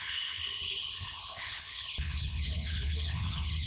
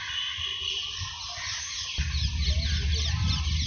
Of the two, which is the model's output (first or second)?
first